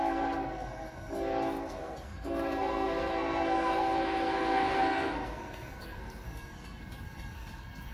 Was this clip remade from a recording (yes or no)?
yes